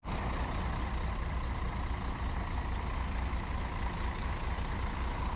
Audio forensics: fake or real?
real